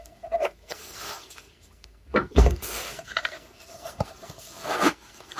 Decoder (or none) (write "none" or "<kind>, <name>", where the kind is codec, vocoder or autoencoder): codec, SNAC